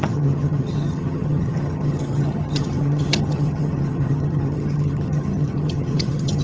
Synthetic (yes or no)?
yes